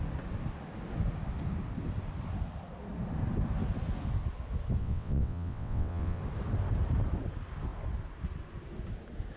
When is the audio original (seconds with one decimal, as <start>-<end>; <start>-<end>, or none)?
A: 0.0-4.8; 6.2-9.4